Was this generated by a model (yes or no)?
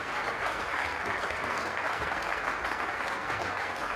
yes